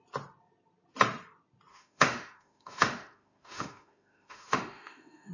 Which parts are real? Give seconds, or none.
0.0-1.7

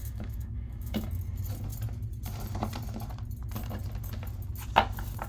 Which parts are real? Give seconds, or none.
1.1-5.3

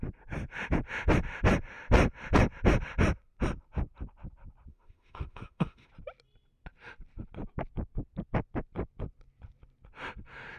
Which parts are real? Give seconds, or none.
0.0-4.7; 5.9-10.6

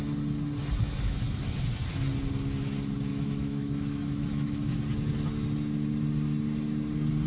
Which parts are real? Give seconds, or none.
0.0-3.1; 4.7-7.3

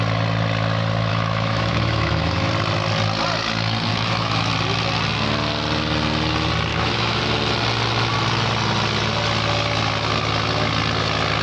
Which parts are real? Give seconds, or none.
0.0-1.1; 2.5-3.9; 4.5-6.7; 7.2-11.4

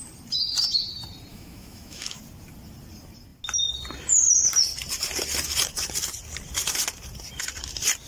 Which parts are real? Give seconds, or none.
0.0-1.3; 2.2-8.1